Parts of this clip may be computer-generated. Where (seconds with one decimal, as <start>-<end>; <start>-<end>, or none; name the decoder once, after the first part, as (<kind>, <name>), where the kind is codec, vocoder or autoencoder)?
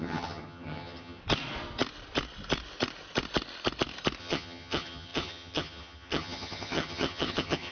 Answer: 0.0-1.2 (vocoder, HiFi-GAN); 4.2-7.7